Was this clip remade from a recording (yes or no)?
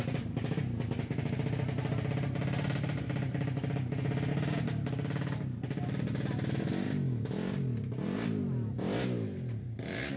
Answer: no